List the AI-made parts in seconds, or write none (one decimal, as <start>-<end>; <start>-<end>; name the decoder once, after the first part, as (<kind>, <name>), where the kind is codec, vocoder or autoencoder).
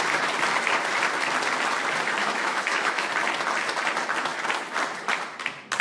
2.2-3.1 (autoencoder, DAC-VAE)